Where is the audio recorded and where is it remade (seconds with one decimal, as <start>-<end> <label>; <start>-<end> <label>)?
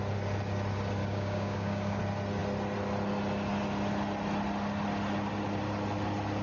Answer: 0.0-1.0 recorded; 1.0-2.0 remade; 2.0-6.4 recorded